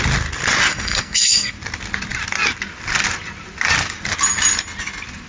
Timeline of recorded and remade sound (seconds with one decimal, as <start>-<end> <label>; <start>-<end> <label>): 0.0-0.7 recorded; 0.7-1.5 remade; 1.5-5.3 recorded

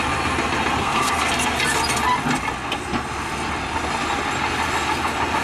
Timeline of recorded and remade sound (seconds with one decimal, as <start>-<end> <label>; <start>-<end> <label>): 0.0-0.8 recorded; 0.8-1.3 remade; 1.3-5.4 recorded

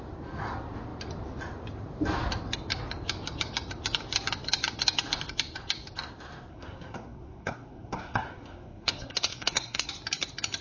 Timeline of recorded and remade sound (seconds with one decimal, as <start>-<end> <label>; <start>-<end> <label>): 0.0-6.5 recorded; 6.5-9.9 remade; 9.9-10.6 recorded

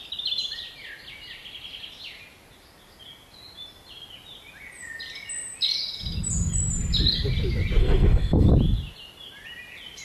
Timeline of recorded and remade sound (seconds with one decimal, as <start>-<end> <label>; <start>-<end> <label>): 0.0-7.8 recorded; 7.8-8.5 remade; 8.5-10.0 recorded

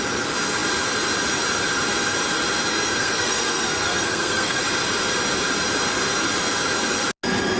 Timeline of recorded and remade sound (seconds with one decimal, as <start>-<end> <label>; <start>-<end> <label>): 0.0-2.7 recorded; 2.7-4.6 remade; 4.6-7.6 recorded

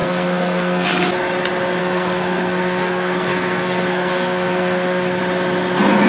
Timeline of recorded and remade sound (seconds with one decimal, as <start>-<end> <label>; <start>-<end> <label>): 0.0-0.9 remade; 0.9-1.8 recorded; 1.8-5.2 remade; 5.2-6.1 recorded

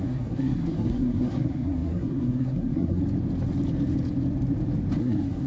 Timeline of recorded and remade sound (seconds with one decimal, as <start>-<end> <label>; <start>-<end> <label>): 0.0-3.0 remade; 3.0-5.0 recorded; 5.0-5.5 remade